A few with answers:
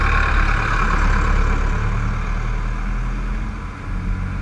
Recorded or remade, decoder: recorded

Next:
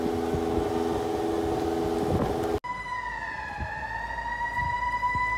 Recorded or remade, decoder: recorded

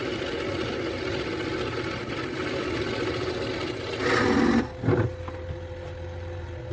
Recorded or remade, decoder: recorded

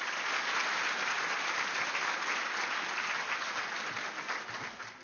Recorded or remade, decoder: recorded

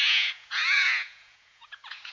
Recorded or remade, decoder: remade, vocoder, Vocos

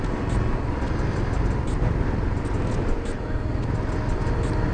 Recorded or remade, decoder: recorded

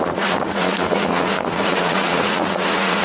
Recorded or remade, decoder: remade, vocoder, Vocos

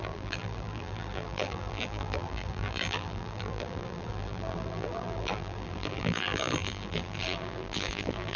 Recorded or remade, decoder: remade, vocoder, BigVGAN v2